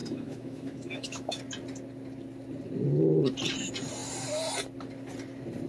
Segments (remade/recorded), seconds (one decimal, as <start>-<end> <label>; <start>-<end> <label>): 0.0-1.4 remade; 1.4-5.7 recorded